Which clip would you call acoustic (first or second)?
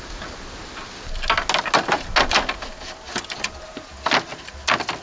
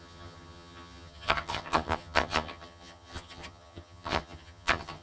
first